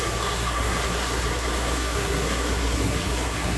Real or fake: fake